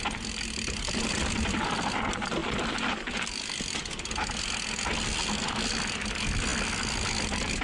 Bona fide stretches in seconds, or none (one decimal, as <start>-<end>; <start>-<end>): 0.0-7.6